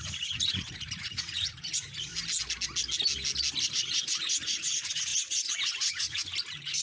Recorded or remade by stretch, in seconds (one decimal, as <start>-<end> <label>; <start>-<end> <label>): 0.0-2.1 remade; 2.1-3.7 recorded; 3.7-6.8 remade

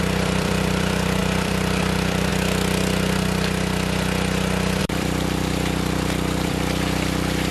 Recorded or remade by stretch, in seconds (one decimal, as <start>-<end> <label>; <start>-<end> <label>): 0.0-2.3 remade; 2.3-4.8 recorded; 4.8-7.5 remade